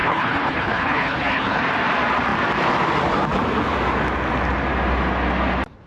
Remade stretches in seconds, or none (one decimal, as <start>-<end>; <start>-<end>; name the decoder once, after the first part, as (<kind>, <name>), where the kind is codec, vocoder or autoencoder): 0.0-1.6 (codec, HILCodec)